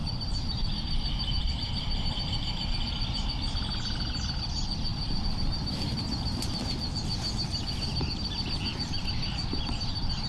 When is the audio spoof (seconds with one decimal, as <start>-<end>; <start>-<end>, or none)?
0.0-2.7